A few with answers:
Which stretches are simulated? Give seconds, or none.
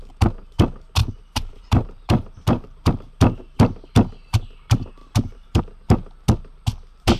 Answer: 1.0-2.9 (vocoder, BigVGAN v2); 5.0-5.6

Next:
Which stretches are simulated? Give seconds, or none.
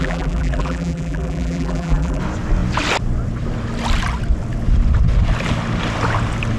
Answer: 0.0-2.2 (vocoder, BigVGAN v2)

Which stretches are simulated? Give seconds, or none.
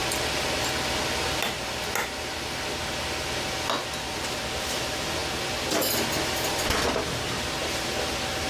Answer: none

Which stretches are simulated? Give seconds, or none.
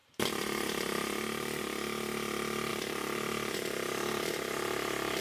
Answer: 0.0-1.6 (vocoder, BigVGAN v2); 2.7-5.2